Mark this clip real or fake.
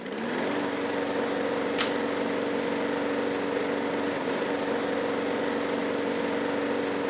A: real